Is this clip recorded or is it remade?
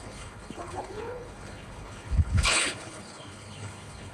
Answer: remade